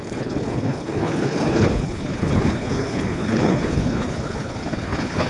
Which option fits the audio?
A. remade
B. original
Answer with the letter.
A